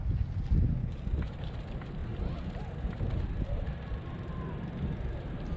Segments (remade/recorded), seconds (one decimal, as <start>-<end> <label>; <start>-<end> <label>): 0.0-0.8 recorded; 0.8-1.4 remade; 1.4-2.0 recorded; 2.0-4.7 remade; 4.7-5.6 recorded